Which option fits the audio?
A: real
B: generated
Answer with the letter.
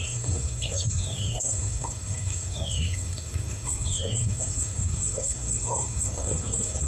B